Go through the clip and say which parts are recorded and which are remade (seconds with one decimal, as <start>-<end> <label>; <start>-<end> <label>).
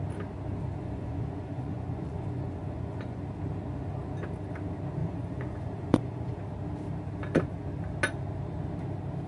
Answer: 0.0-0.8 recorded; 0.8-3.2 remade; 3.2-5.0 recorded; 5.0-6.4 remade; 6.4-9.3 recorded